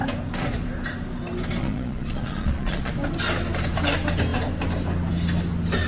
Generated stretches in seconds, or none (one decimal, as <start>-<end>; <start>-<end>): 1.6-2.9